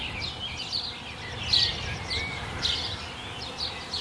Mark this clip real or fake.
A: real